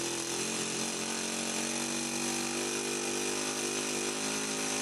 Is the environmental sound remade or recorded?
recorded